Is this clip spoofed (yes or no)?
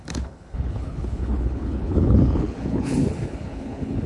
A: yes